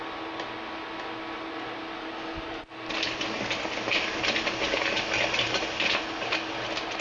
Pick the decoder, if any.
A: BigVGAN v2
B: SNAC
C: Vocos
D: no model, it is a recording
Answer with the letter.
D